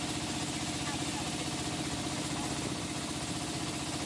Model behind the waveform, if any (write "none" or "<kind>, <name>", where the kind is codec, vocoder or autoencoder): none